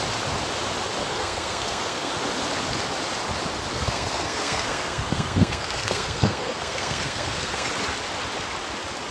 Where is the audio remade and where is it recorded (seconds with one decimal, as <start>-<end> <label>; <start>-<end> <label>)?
0.0-1.0 recorded; 1.0-2.1 remade; 2.1-3.7 recorded; 3.7-7.7 remade; 7.7-9.1 recorded